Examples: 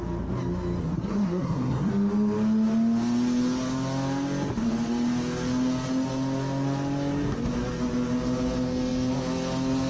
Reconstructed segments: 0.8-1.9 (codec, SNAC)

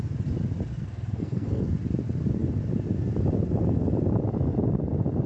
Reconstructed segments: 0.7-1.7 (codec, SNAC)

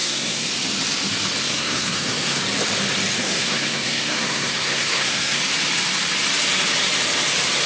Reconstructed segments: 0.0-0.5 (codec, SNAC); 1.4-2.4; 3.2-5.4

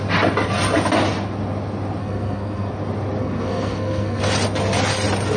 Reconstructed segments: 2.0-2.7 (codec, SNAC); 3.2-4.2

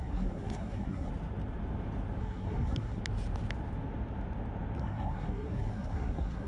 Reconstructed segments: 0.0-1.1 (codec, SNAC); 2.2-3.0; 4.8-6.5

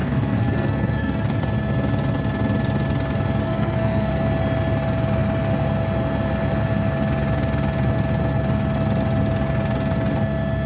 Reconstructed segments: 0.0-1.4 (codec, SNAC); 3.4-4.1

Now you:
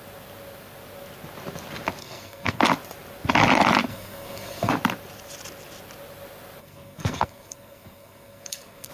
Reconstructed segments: 2.0-2.6 (codec, SNAC); 3.9-4.7; 6.6-8.9

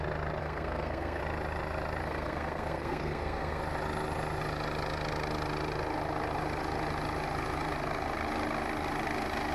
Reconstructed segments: 0.4-1.2 (codec, SNAC); 2.0-3.6